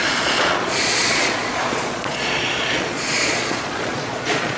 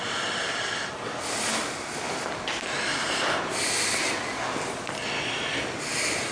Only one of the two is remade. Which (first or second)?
first